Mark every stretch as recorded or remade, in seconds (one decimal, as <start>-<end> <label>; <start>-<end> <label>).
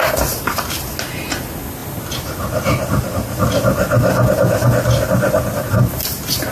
0.0-6.5 recorded